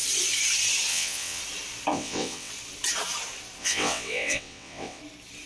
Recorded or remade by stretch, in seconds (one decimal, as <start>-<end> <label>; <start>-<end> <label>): 0.0-0.9 recorded; 0.9-1.4 remade; 1.4-1.9 recorded; 1.9-2.5 remade; 2.5-3.6 recorded; 3.6-5.0 remade; 5.0-5.5 recorded